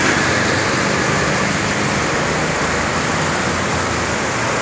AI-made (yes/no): no